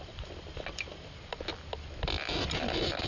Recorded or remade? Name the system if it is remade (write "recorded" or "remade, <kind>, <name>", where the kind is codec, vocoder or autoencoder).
remade, vocoder, BigVGAN v2